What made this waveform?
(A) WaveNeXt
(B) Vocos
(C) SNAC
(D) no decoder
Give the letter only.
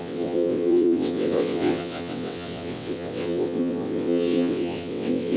A